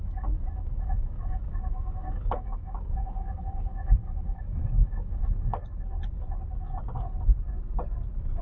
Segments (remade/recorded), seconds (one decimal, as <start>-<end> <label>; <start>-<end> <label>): 0.0-5.2 remade; 5.2-8.4 recorded